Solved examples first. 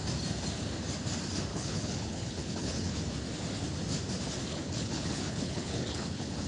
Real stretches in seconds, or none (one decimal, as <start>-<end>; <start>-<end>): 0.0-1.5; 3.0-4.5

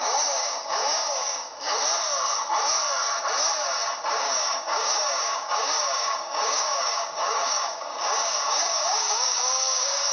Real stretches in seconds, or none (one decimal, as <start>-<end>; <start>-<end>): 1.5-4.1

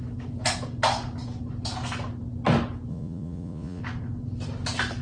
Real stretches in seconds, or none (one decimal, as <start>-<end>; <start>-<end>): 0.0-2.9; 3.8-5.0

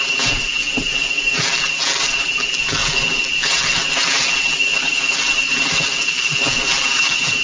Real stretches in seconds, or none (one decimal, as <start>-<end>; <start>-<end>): 0.0-7.4

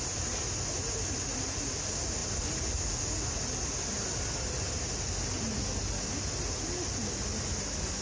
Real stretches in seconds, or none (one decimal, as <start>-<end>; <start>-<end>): 0.0-8.0

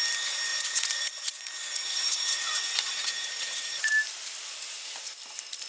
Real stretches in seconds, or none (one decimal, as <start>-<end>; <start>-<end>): 0.0-0.5; 3.9-5.7

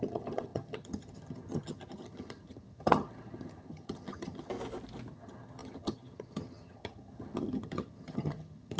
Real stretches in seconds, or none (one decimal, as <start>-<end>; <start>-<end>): 4.5-5.1

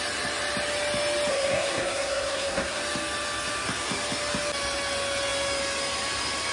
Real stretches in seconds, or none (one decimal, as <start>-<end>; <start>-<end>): 0.0-1.3; 2.8-6.5